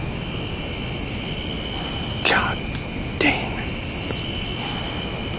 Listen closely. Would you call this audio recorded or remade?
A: recorded